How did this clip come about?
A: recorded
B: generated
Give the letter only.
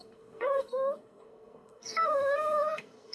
B